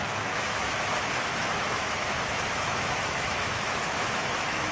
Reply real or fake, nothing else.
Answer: fake